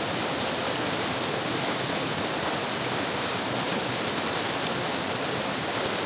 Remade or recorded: recorded